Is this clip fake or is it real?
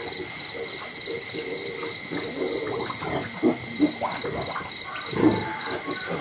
real